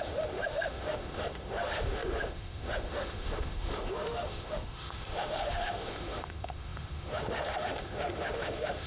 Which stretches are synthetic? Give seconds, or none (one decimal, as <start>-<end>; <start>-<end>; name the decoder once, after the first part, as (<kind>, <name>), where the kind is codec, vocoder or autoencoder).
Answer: 0.0-8.9 (autoencoder, DAC-VAE)